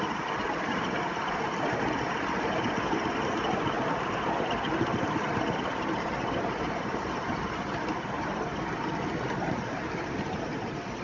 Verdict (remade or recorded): recorded